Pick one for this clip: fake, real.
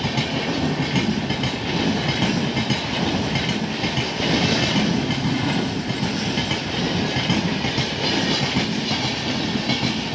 real